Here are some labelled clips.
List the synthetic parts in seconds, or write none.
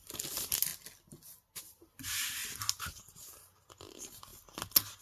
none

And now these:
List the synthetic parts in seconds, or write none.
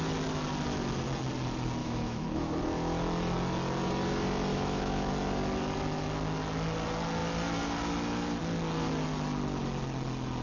1.8-2.6 (autoencoder, DAC-VAE); 4.5-5.1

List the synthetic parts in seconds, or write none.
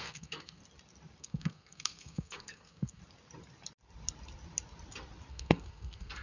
0.0-0.6 (codec, SNAC); 1.2-3.0; 5.3-6.2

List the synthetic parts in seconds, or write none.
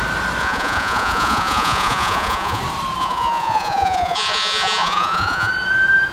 0.4-2.6 (vocoder, Vocos); 3.0-5.5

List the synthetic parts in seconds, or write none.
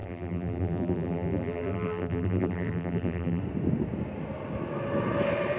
0.0-3.4 (vocoder, BigVGAN v2)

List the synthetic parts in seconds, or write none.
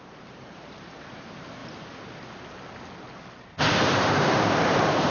0.0-1.6 (vocoder, BigVGAN v2); 3.7-5.1